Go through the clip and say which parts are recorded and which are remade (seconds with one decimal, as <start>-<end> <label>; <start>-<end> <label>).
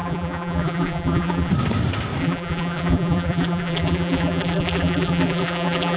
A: 0.0-1.5 remade; 1.5-2.2 recorded; 2.2-6.0 remade